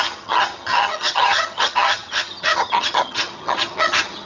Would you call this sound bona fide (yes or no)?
no